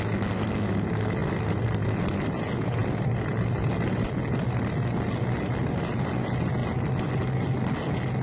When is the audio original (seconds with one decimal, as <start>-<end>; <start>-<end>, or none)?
0.0-1.2; 2.0-2.8; 4.2-6.6; 7.1-8.2